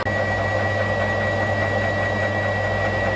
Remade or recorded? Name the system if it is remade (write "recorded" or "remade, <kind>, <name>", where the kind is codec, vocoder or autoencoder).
recorded